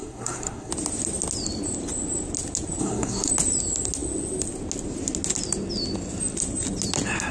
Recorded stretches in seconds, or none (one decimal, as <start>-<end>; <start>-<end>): 0.7-2.8; 3.3-7.3

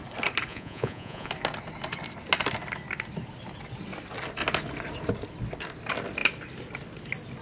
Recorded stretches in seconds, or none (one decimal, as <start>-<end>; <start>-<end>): 0.0-0.5; 1.3-7.4

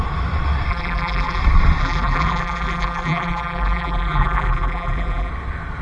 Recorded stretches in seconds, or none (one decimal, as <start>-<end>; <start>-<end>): 0.0-0.7; 1.4-1.8; 5.3-5.8

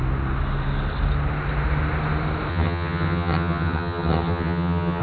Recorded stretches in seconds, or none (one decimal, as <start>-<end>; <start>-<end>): 0.0-2.5

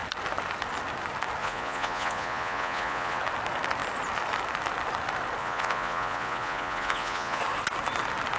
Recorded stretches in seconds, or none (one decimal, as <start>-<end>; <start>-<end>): 0.0-1.4; 3.2-5.4; 7.4-8.4